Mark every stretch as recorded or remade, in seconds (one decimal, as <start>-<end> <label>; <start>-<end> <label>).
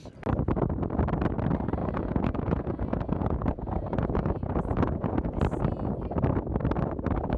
0.0-1.8 recorded; 1.8-5.4 remade; 5.4-7.4 recorded